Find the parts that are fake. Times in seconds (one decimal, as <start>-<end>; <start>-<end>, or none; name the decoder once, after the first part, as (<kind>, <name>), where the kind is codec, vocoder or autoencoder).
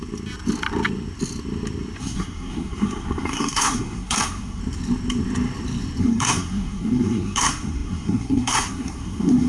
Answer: 2.0-4.6 (codec, SNAC); 6.0-9.5